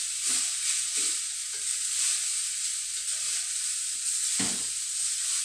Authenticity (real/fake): real